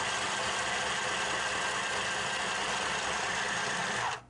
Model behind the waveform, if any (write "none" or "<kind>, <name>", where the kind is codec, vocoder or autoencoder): none